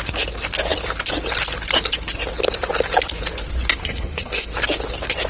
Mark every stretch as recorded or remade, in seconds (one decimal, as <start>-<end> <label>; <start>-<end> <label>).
0.0-3.8 recorded; 3.8-4.5 remade; 4.5-5.3 recorded